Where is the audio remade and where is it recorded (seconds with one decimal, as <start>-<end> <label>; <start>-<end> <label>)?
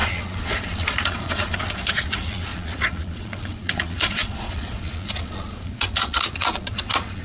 0.0-7.2 remade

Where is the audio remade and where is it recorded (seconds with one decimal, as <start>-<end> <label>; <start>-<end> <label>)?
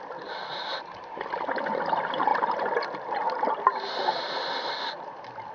0.0-5.5 recorded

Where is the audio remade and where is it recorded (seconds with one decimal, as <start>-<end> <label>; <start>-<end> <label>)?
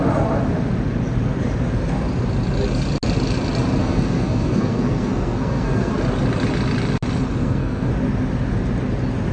0.0-3.8 recorded; 3.8-5.9 remade; 5.9-7.4 recorded; 7.4-7.9 remade; 7.9-9.3 recorded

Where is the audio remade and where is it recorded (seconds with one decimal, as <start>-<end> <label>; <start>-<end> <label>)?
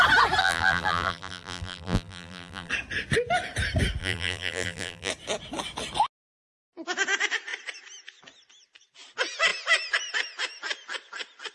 0.0-0.4 recorded; 0.4-2.7 remade; 2.7-4.0 recorded; 4.0-5.1 remade; 5.1-11.5 recorded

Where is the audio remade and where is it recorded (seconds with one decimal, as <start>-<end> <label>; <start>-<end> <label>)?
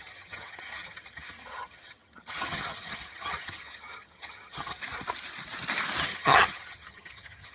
0.0-4.8 remade; 4.8-6.0 recorded; 6.0-7.5 remade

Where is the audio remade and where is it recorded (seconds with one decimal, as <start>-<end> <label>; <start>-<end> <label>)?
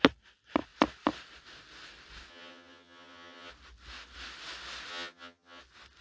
0.0-2.3 recorded; 2.3-3.5 remade; 3.5-4.9 recorded; 4.9-5.6 remade; 5.6-6.0 recorded